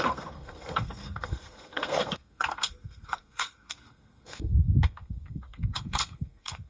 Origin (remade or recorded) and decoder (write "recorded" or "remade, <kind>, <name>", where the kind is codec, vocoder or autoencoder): remade, codec, SNAC